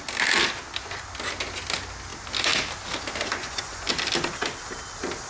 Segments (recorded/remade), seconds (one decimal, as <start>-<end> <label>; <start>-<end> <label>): 0.0-3.4 recorded; 3.4-3.9 remade; 3.9-5.3 recorded